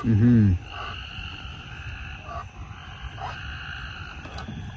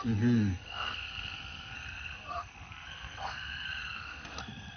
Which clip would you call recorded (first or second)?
first